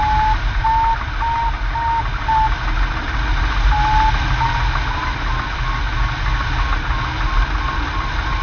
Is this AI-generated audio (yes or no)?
no